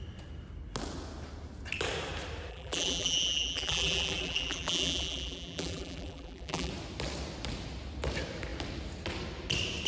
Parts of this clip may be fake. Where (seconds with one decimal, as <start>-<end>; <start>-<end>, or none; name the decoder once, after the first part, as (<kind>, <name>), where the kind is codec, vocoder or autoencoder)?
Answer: 2.5-6.7 (vocoder, BigVGAN v2)